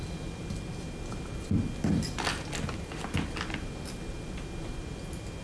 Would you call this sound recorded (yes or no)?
yes